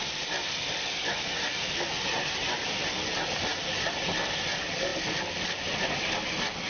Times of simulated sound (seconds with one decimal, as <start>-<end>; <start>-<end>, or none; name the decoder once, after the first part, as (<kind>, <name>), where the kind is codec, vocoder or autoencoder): none

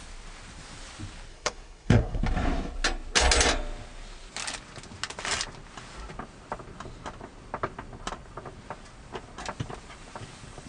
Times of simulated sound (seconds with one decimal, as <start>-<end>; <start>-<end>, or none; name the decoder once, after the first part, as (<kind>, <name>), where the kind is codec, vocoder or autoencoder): 1.3-2.2 (codec, SNAC)